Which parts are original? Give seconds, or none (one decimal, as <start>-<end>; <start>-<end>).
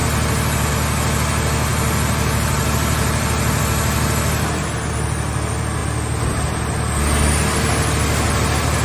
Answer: 0.7-1.7; 3.6-8.8